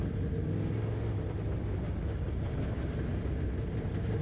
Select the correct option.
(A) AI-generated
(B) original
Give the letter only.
B